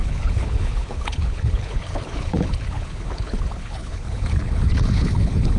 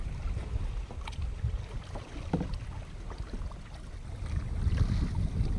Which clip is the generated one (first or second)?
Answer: first